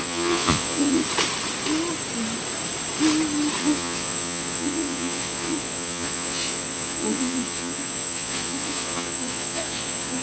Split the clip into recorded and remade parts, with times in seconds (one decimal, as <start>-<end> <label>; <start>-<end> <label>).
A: 0.0-1.0 remade; 1.0-3.6 recorded; 3.6-10.2 remade